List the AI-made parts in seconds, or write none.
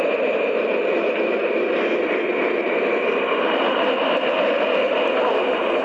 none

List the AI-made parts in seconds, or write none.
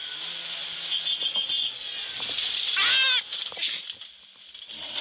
none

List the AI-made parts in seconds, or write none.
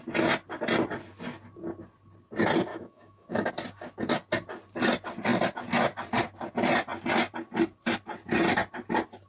2.7-3.5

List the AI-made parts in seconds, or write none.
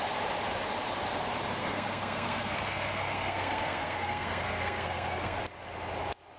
1.6-5.4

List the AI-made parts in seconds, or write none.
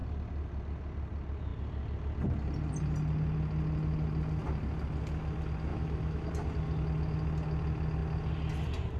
5.7-6.3